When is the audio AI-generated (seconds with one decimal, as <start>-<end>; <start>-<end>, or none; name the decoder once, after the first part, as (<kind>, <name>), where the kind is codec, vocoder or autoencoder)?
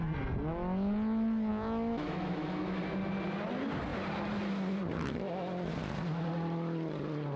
1.5-2.8 (autoencoder, DAC-VAE)